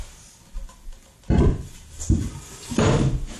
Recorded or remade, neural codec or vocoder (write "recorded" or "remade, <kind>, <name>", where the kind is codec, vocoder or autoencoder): recorded